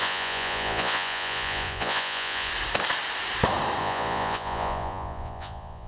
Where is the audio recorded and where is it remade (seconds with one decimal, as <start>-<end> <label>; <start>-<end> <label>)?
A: 0.0-2.5 remade; 2.5-3.8 recorded; 3.8-5.9 remade